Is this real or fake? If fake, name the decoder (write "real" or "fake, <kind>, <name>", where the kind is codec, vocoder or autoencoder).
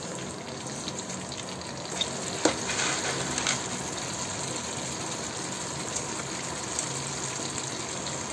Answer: real